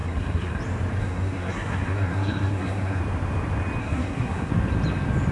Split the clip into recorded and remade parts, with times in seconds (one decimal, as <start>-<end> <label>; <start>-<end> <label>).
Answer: 0.0-0.6 remade; 0.6-1.0 recorded; 1.0-3.0 remade; 3.0-3.8 recorded; 3.8-4.5 remade; 4.5-5.3 recorded